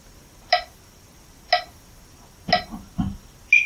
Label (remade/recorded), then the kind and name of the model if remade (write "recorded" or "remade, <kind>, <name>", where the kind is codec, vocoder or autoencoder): recorded